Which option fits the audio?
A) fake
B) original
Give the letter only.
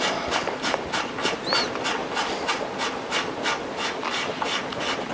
B